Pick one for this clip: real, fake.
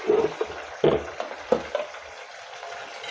real